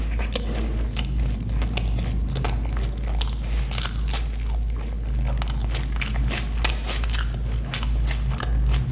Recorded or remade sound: recorded